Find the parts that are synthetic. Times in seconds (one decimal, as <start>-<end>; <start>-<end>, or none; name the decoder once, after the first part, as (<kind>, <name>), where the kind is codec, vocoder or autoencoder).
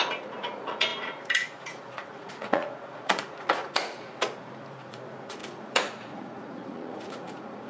0.0-7.7 (vocoder, Vocos)